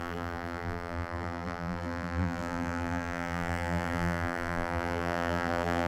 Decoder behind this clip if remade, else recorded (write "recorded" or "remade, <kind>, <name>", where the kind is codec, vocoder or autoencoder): remade, vocoder, BigVGAN v2